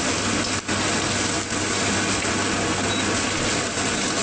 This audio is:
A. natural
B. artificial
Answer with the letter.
A